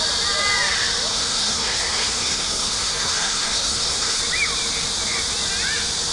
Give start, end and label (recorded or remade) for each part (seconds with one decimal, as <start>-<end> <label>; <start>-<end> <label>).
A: 0.0-1.1 recorded; 1.1-4.2 remade; 4.2-6.1 recorded